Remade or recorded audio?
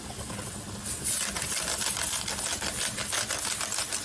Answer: recorded